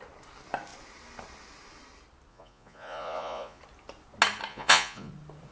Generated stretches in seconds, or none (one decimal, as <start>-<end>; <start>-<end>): 2.3-3.6; 4.5-5.1